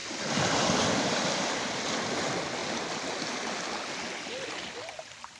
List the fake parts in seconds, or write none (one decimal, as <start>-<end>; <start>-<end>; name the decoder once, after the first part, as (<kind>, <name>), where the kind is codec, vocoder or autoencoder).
none